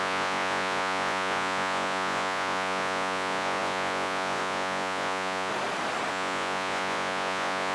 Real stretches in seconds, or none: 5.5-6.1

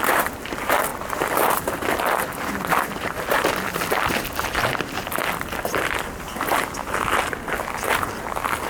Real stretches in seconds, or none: 0.0-0.9; 6.0-8.7

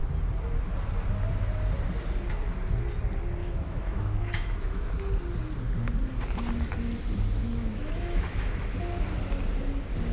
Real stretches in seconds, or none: 0.0-3.4; 4.9-7.4; 8.6-10.1

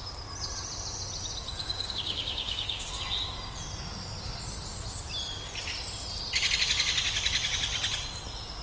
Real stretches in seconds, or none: 0.0-1.6; 2.9-8.6

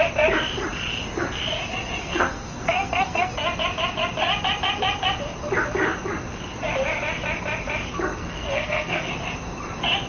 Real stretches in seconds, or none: 0.0-2.0; 3.3-8.2; 9.1-10.1

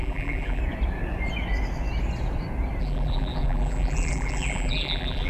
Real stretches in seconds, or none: 0.6-2.8

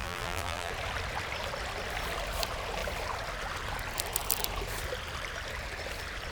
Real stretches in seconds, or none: 0.7-6.3

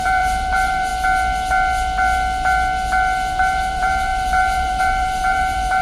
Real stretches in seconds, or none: 0.9-3.4